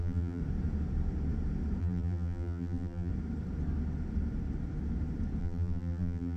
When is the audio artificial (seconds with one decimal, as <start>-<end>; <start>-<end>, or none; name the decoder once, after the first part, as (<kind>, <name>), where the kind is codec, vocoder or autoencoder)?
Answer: 0.0-0.4 (vocoder, BigVGAN v2); 1.8-3.1; 5.4-6.4